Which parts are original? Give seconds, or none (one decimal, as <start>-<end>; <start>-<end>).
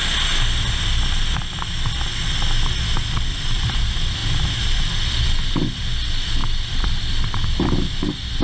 0.0-3.3; 3.8-4.2; 5.5-6.4; 7.0-8.4